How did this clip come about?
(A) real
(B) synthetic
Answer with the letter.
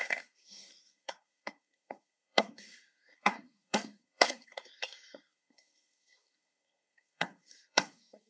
B